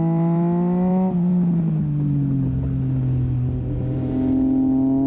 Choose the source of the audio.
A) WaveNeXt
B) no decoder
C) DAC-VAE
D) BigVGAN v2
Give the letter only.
B